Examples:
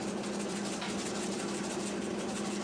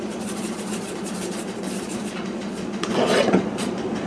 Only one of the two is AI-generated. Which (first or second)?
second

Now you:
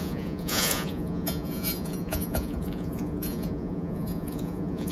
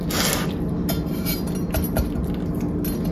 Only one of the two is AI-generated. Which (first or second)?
first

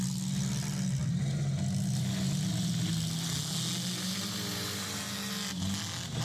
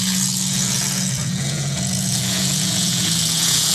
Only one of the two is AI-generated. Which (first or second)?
second